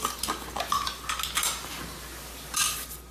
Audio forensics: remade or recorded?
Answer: recorded